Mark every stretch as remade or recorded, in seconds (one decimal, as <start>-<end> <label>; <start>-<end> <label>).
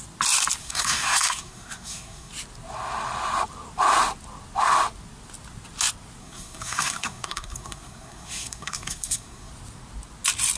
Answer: 0.0-0.6 recorded; 0.6-2.3 remade; 2.3-6.2 recorded; 6.2-9.5 remade; 9.5-10.6 recorded